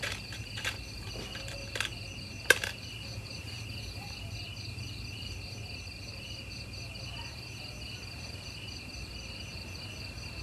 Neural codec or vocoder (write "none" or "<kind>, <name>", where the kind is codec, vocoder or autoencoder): vocoder, BigVGAN v2